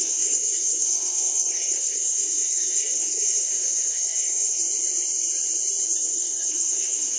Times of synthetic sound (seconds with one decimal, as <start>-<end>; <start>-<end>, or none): 0.0-4.6; 6.0-7.2